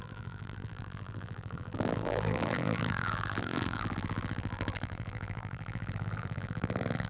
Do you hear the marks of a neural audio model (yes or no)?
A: yes